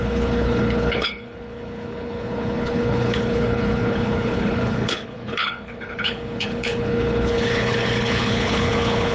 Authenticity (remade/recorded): remade